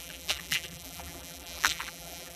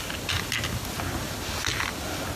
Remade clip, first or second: first